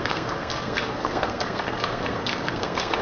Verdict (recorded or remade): remade